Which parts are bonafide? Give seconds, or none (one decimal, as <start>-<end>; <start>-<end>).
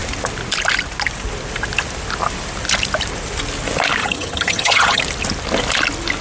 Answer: 0.0-4.0; 5.0-6.2